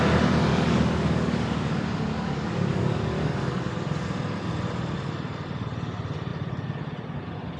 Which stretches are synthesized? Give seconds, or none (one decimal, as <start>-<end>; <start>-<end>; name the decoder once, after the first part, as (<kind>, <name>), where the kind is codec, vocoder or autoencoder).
0.5-3.7 (codec, DAC)